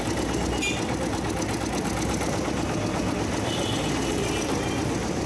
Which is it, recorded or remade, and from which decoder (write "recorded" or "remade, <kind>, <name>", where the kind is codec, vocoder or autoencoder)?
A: recorded